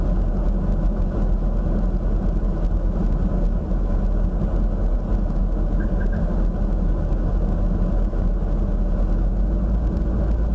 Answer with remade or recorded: recorded